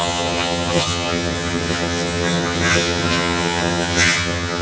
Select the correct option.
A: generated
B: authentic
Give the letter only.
A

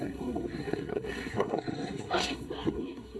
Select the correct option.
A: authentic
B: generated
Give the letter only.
B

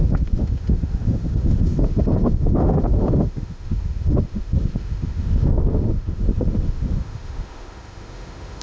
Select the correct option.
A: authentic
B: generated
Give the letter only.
B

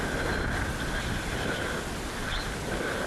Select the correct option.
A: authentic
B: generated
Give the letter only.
A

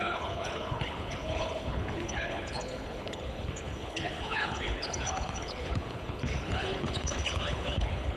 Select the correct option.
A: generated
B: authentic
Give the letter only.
A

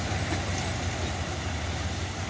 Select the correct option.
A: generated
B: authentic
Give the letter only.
B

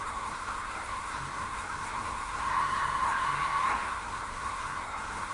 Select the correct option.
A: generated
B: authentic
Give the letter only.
A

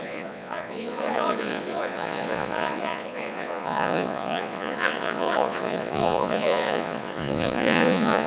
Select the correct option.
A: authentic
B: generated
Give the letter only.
B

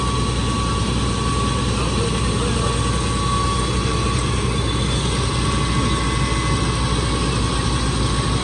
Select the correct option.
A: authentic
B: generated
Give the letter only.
A